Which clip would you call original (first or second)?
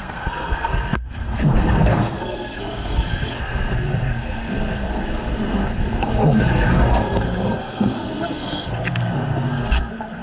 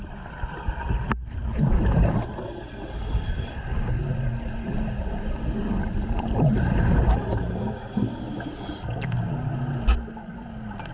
second